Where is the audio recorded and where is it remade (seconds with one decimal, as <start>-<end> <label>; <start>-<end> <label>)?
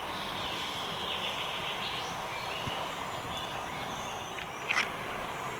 0.0-5.6 recorded